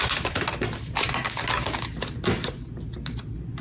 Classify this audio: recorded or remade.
recorded